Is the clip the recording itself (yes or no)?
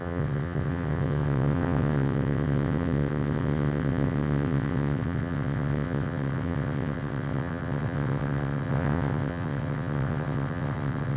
no